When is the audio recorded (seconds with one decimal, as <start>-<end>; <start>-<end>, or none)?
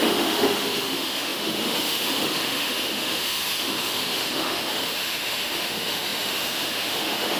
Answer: none